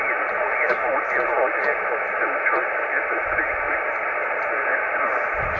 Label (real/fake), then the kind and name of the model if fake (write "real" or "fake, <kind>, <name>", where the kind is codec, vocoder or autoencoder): real